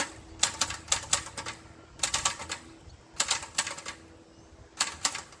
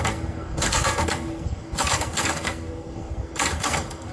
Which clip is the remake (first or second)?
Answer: second